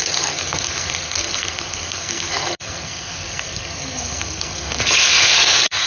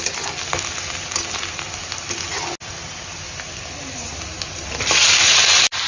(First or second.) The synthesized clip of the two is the first